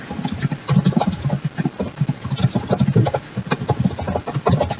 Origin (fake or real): real